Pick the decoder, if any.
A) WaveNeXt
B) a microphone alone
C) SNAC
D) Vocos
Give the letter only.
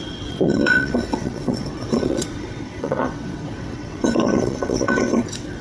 A